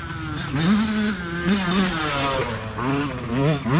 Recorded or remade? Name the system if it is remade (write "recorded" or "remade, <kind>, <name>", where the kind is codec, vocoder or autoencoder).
recorded